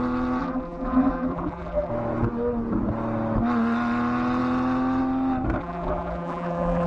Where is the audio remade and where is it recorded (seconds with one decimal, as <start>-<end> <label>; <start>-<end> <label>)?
0.0-0.4 recorded; 0.4-1.9 remade; 1.9-5.6 recorded; 5.6-6.9 remade